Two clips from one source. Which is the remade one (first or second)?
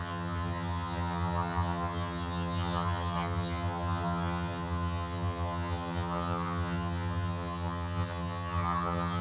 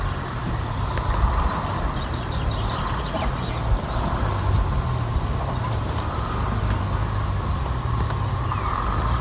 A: first